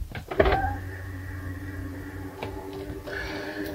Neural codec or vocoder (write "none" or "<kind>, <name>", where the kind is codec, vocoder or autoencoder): none